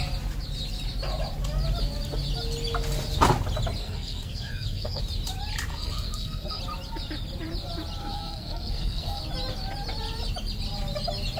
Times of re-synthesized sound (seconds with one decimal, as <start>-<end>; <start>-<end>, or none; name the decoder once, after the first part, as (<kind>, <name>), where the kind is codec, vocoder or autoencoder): 3.8-5.0 (codec, SNAC); 5.7-6.6; 8.0-9.2